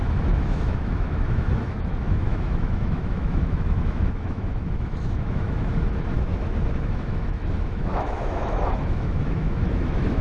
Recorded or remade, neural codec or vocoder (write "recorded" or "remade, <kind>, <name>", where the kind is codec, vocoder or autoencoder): remade, autoencoder, DAC-VAE